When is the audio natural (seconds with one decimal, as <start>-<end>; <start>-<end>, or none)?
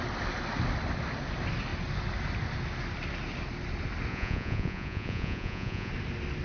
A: 0.0-4.1; 5.9-6.4